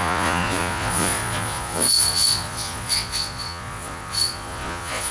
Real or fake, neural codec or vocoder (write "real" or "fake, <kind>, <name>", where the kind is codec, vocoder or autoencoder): fake, vocoder, Vocos